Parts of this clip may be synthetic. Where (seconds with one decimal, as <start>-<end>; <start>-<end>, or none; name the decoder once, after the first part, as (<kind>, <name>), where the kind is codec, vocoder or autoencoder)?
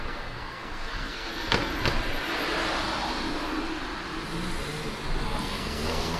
0.0-1.7 (codec, SNAC); 5.4-6.2